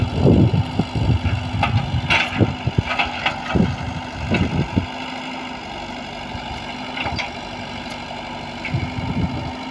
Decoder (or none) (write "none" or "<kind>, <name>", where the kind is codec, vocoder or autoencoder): none